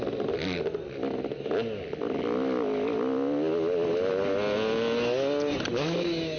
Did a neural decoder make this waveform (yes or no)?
no